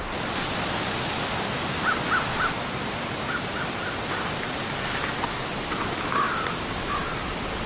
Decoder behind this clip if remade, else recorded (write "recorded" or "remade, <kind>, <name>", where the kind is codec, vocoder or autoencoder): recorded